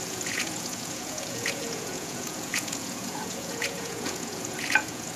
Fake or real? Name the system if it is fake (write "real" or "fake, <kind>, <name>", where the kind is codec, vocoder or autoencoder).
fake, vocoder, Vocos